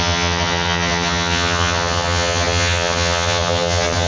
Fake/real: fake